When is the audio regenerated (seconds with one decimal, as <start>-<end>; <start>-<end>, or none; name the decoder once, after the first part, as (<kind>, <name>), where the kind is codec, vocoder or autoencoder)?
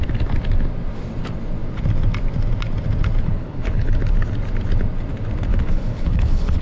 3.2-3.9 (codec, HILCodec); 5.5-6.6